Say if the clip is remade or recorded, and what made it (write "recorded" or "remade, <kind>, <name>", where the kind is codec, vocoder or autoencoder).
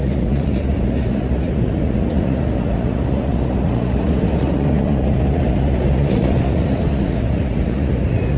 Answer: remade, vocoder, Vocos